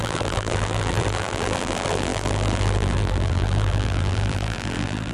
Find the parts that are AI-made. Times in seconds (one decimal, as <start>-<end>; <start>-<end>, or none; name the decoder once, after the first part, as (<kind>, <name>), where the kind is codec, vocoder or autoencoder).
0.0-5.1 (vocoder, BigVGAN v2)